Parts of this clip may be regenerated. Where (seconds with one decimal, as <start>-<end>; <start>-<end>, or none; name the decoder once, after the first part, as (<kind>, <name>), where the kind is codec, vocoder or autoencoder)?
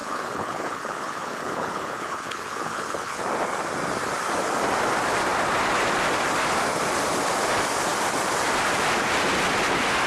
0.0-3.2 (codec, HILCodec)